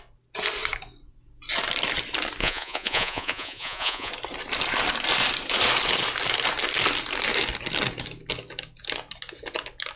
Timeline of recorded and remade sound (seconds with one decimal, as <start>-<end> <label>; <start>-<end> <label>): 0.0-2.4 recorded; 2.4-4.1 remade; 4.1-10.0 recorded